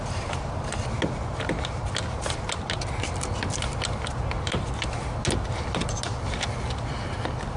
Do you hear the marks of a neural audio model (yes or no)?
no